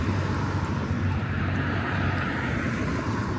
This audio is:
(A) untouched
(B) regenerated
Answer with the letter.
B